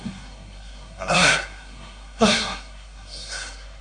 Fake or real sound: fake